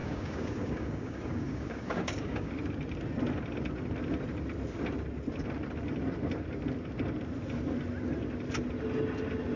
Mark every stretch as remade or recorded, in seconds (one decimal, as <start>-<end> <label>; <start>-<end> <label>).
0.0-2.5 remade; 2.5-9.6 recorded